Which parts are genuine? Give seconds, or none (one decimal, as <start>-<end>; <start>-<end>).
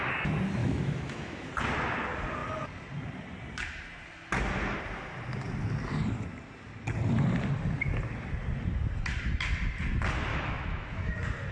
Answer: 0.0-0.6; 1.5-10.3; 11.1-11.5